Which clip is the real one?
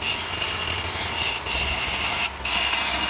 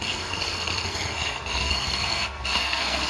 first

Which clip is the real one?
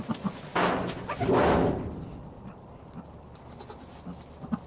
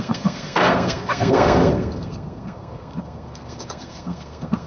first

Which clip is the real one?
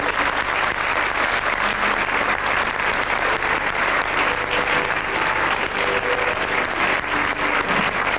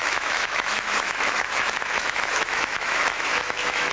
first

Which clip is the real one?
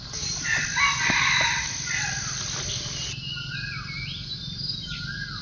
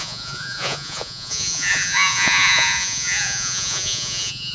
first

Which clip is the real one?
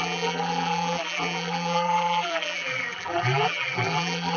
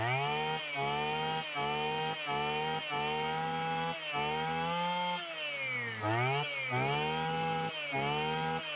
second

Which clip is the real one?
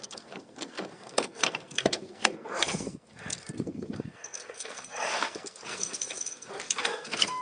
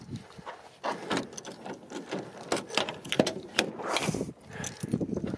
second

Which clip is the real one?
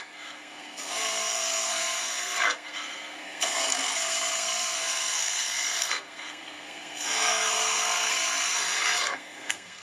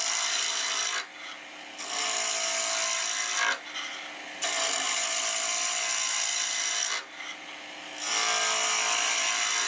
second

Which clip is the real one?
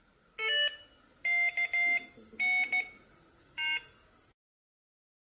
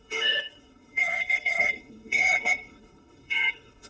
first